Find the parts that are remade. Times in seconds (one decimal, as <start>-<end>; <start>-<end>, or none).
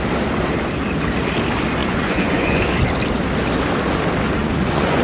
1.8-2.6; 4.4-5.0